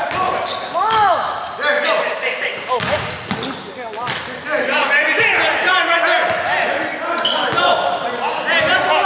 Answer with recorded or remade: recorded